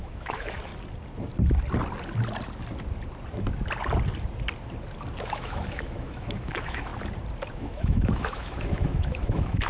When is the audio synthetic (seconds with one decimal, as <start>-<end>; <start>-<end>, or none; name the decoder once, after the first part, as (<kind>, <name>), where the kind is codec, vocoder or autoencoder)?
0.0-0.7 (autoencoder, DAC-VAE); 5.2-6.9; 7.5-9.7